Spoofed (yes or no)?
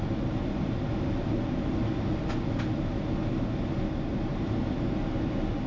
no